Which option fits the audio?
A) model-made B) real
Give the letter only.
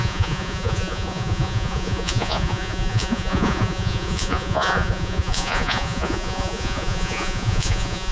A